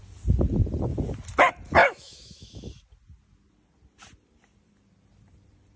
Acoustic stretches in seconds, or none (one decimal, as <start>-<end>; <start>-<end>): 0.0-1.8; 2.7-5.8